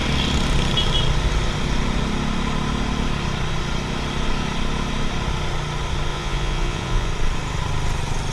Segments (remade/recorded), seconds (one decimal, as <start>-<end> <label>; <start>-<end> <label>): 0.0-6.1 recorded; 6.1-7.1 remade; 7.1-8.3 recorded